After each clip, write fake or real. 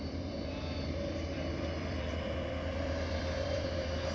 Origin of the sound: fake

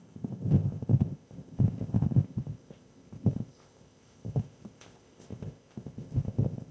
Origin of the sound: fake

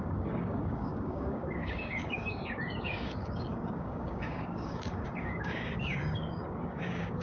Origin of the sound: fake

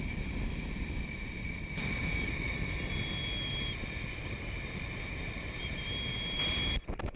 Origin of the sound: real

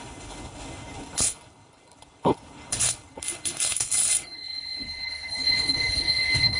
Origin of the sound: fake